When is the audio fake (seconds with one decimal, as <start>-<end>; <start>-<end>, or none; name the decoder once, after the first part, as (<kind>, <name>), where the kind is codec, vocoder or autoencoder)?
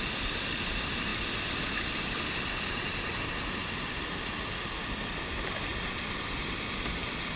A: 0.0-1.1 (vocoder, BigVGAN v2); 2.2-5.7; 6.5-7.4